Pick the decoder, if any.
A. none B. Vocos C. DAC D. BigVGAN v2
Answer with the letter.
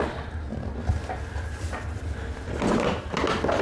A